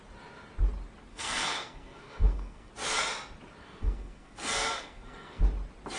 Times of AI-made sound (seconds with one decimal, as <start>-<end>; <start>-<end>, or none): 1.1-2.7; 3.6-5.4